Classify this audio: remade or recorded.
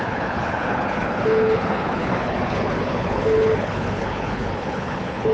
remade